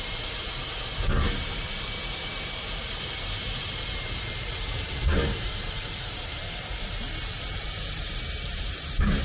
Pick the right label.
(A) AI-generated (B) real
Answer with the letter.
A